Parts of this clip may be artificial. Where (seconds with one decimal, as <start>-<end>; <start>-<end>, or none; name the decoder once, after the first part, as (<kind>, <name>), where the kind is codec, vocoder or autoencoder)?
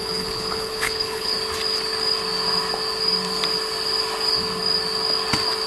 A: 0.0-1.3 (codec, HILCodec)